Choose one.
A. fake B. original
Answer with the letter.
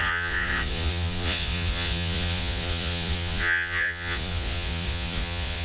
A